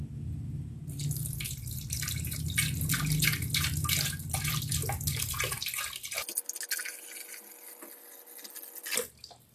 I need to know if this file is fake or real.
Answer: real